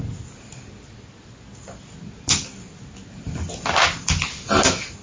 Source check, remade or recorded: recorded